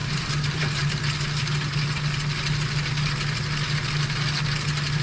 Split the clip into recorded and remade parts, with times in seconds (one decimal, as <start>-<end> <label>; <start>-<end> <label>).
0.0-0.9 remade; 0.9-5.0 recorded